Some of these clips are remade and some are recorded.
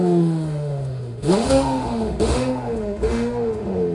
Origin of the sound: remade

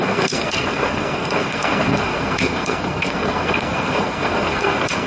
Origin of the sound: remade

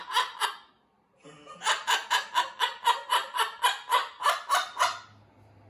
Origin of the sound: recorded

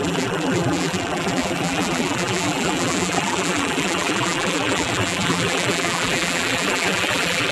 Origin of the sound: remade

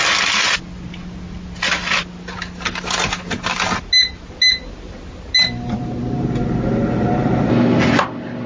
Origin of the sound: recorded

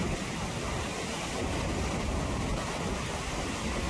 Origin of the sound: recorded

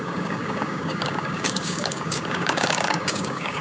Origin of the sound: remade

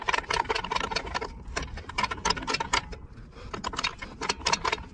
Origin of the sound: recorded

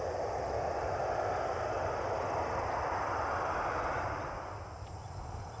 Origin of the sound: recorded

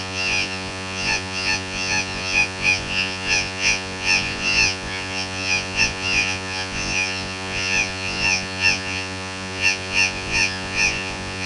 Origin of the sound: remade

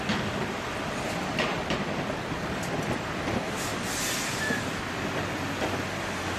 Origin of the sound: recorded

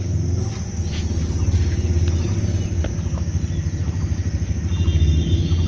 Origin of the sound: recorded